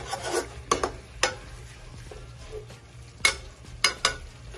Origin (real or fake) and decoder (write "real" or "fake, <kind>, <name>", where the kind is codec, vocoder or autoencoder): real